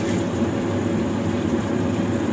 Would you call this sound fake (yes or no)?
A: yes